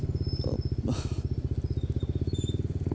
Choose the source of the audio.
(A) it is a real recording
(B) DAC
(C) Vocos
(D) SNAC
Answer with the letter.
A